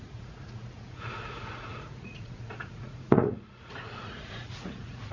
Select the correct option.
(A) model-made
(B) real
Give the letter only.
A